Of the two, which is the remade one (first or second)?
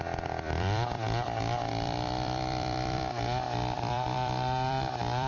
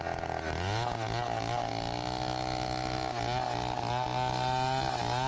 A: first